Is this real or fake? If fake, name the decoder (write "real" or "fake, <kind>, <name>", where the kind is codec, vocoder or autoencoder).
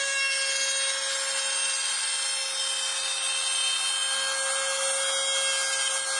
real